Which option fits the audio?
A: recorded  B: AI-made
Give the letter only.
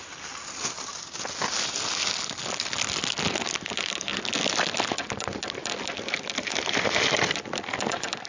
A